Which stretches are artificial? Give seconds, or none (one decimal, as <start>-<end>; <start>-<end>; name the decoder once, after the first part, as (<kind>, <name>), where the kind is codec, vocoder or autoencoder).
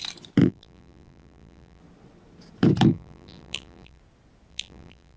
0.4-1.8 (vocoder, BigVGAN v2); 2.9-4.0; 4.5-5.2